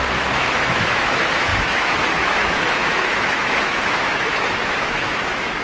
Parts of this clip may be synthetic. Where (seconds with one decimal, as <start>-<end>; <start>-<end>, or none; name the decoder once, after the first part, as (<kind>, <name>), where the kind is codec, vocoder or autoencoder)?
0.0-5.6 (autoencoder, DAC-VAE)